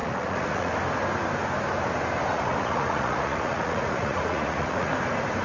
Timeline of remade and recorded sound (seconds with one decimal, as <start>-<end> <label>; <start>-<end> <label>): 0.0-0.7 remade; 0.7-2.3 recorded; 2.3-4.9 remade; 4.9-5.4 recorded